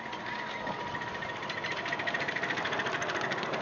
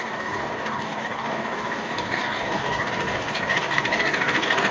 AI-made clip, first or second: second